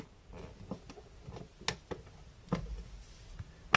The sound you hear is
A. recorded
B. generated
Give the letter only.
A